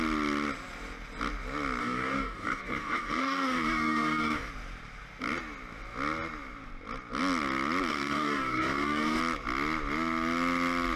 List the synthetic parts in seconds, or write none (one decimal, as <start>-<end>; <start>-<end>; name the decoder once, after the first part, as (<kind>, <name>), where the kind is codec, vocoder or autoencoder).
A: 1.8-4.5 (codec, DAC); 7.9-9.2